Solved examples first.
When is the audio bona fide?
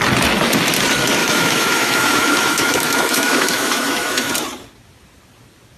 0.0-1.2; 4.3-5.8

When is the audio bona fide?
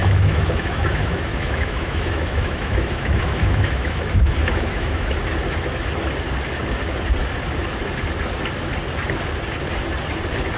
5.1-10.6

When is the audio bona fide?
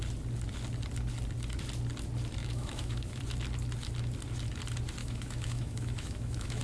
0.0-2.4; 3.2-5.0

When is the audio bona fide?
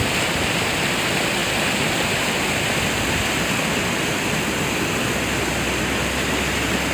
0.0-6.9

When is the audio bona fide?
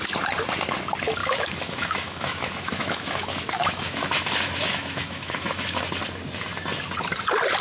0.0-1.2; 5.8-7.6